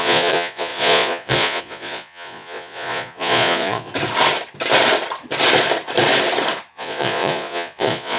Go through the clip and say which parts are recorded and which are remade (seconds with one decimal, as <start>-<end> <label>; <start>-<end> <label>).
0.0-3.9 remade; 3.9-6.7 recorded; 6.7-8.2 remade

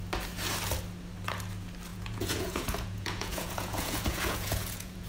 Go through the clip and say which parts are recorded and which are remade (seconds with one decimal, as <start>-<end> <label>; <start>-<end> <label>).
0.0-1.9 recorded; 1.9-5.1 remade